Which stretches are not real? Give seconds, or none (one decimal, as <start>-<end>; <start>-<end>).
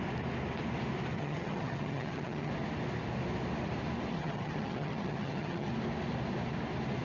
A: 1.1-2.5; 4.1-5.7